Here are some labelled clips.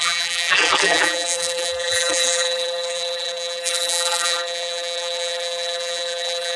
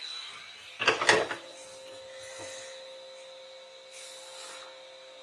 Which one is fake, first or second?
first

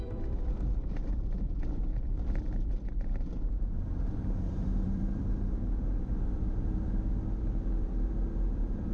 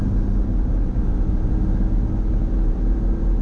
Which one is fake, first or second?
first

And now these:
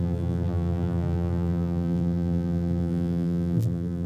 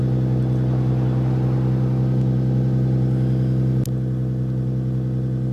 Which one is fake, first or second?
first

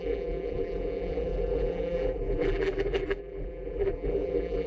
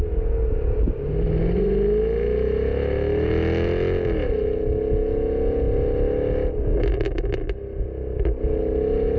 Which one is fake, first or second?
first